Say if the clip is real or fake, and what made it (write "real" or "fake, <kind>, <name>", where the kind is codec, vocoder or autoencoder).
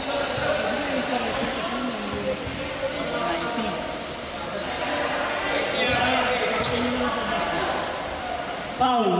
real